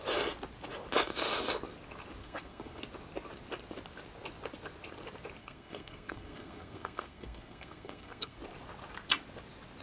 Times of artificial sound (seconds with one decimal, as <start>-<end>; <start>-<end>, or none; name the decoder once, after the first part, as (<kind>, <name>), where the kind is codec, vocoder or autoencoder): 2.2-2.8 (codec, SNAC); 5.4-8.4